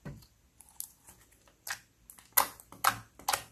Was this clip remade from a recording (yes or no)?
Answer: no